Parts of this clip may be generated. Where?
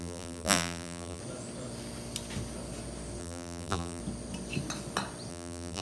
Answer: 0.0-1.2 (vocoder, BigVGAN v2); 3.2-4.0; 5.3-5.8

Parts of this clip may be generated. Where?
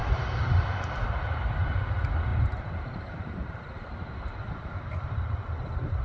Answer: 0.0-1.9 (vocoder, BigVGAN v2); 2.3-6.0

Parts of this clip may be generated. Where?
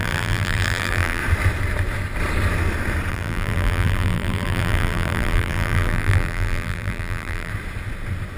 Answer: 0.0-1.2 (vocoder, BigVGAN v2); 3.1-7.5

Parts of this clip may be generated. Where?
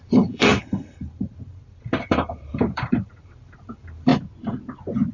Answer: 0.0-4.1 (vocoder, BigVGAN v2)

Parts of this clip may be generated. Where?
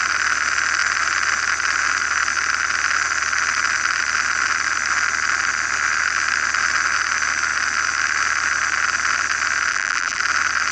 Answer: 9.7-10.2 (vocoder, BigVGAN v2)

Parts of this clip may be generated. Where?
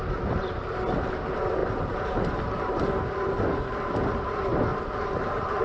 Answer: 4.7-5.6 (vocoder, BigVGAN v2)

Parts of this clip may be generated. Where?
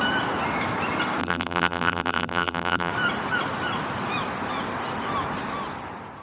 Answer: 1.2-2.9 (vocoder, BigVGAN v2)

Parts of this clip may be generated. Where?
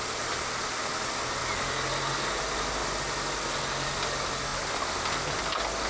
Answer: none